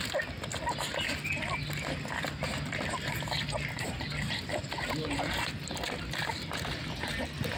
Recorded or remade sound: recorded